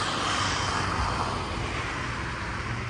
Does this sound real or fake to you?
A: real